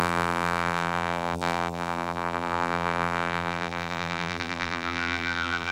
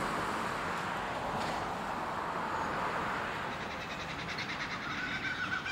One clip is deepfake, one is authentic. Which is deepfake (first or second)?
first